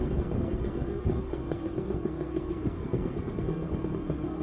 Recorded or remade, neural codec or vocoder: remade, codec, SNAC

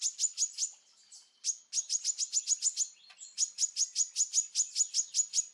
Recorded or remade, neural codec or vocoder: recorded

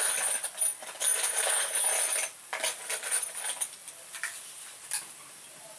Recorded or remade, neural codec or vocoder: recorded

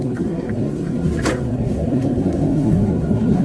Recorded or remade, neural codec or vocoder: remade, codec, SNAC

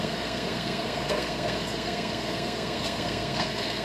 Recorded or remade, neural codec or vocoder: remade, codec, SNAC